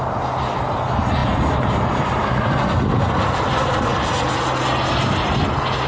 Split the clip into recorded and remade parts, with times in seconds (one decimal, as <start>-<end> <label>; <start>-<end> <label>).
0.0-5.9 recorded